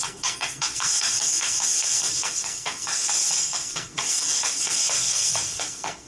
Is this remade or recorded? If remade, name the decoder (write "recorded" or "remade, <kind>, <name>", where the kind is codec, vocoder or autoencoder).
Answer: remade, codec, SNAC